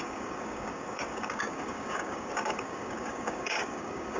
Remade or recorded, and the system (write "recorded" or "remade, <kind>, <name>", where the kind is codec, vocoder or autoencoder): remade, codec, DAC